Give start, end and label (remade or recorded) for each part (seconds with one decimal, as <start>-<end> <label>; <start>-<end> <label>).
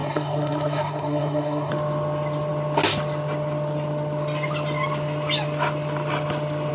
0.0-1.7 remade; 1.7-6.7 recorded